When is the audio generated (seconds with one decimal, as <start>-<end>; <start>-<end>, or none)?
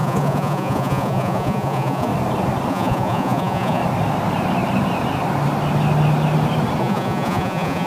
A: 0.0-2.1; 2.7-3.8; 6.8-7.9